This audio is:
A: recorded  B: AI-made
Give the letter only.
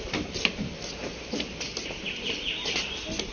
A